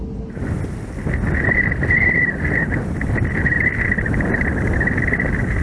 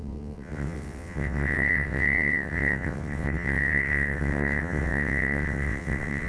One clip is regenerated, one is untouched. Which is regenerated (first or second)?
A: second